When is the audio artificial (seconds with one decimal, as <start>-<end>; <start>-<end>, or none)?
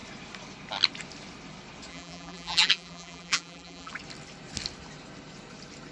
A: 1.9-3.9